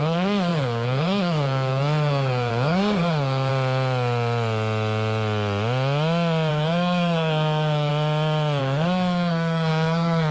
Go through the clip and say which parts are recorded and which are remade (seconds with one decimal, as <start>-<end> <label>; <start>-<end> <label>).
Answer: 0.0-3.5 remade; 3.5-6.5 recorded; 6.5-7.9 remade; 7.9-8.6 recorded; 8.6-10.3 remade